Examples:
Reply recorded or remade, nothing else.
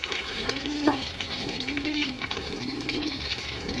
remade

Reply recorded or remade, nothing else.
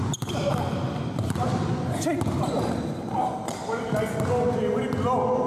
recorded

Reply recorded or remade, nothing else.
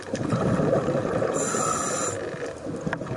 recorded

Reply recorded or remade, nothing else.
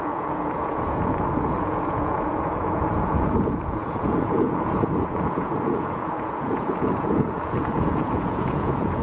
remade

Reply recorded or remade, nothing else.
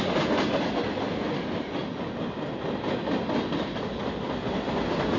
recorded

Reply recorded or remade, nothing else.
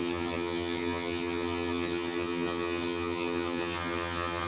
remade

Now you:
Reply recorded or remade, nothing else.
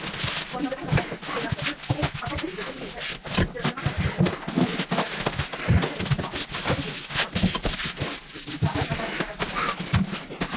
recorded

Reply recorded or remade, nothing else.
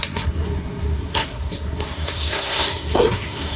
remade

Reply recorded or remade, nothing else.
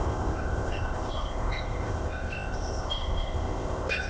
remade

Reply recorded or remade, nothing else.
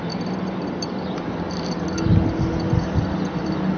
recorded